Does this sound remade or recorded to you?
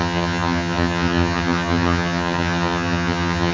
remade